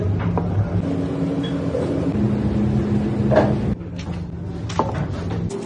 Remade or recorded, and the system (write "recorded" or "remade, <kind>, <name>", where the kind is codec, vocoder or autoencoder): recorded